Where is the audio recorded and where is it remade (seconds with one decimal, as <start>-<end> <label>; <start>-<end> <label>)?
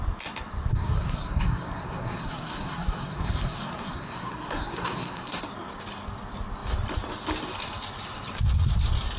0.0-0.7 recorded; 0.7-5.4 remade; 5.4-9.2 recorded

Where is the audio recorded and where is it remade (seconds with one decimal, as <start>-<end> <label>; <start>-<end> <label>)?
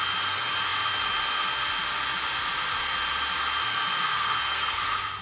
0.0-4.1 recorded; 4.1-4.8 remade; 4.8-5.2 recorded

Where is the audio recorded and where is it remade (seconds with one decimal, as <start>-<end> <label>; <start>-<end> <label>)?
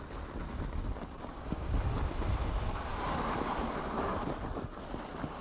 0.0-1.2 recorded; 1.2-1.7 remade; 1.7-5.4 recorded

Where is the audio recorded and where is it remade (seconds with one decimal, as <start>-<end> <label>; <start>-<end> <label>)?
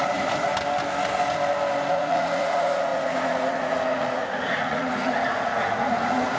0.0-0.5 remade; 0.5-1.9 recorded; 1.9-6.4 remade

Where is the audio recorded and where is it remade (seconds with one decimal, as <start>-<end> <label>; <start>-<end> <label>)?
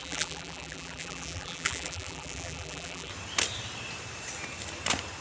0.0-3.1 remade; 3.1-5.2 recorded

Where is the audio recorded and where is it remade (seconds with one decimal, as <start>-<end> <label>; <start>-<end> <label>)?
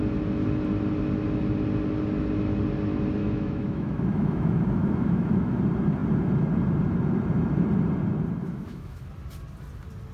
0.0-3.2 recorded; 3.2-5.6 remade; 5.6-8.4 recorded; 8.4-9.0 remade; 9.0-10.1 recorded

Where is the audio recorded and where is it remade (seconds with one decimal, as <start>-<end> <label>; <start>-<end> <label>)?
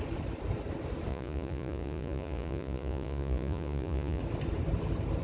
0.0-1.1 recorded; 1.1-4.2 remade; 4.2-5.2 recorded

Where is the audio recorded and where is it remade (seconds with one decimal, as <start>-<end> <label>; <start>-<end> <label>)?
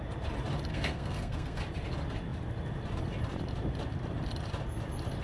0.0-0.7 recorded; 0.7-1.6 remade; 1.6-5.2 recorded